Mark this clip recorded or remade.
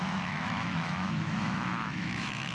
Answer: remade